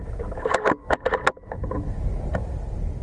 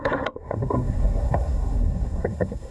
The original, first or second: first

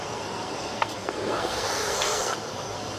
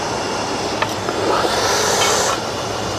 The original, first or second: second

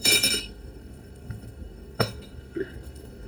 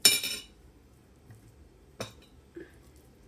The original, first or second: second